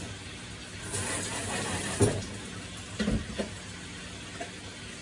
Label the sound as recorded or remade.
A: recorded